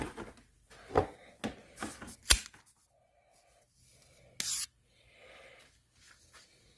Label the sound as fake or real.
real